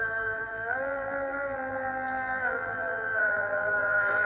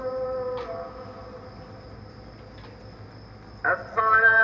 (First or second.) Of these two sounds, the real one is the second